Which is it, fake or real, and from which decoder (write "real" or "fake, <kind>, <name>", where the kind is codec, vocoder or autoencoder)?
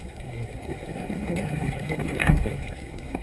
fake, codec, SNAC